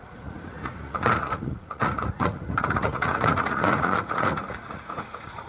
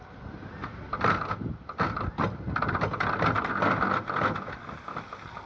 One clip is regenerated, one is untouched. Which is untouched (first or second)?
second